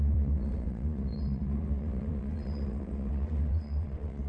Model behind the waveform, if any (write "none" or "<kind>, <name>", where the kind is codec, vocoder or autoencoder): vocoder, WaveNeXt